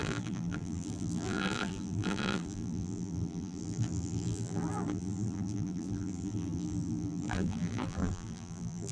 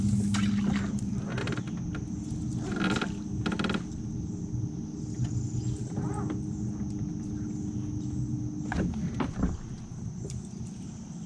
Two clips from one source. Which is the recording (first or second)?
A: second